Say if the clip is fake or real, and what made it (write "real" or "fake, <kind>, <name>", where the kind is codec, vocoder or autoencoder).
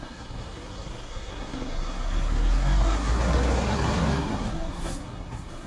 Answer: fake, codec, SNAC